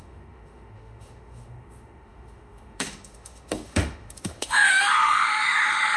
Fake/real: fake